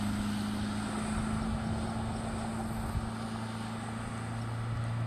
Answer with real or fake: real